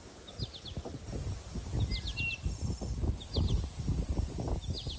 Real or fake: real